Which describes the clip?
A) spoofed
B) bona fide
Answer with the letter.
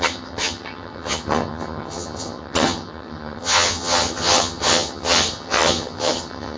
A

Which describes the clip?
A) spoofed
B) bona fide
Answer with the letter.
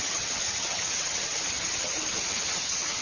A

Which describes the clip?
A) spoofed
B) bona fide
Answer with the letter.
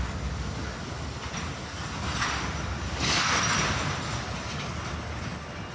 B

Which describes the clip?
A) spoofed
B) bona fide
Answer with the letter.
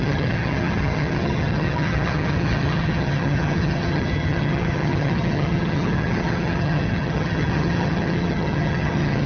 A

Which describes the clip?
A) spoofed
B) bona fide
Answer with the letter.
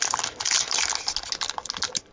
B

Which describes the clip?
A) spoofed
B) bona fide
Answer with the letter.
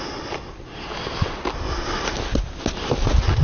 B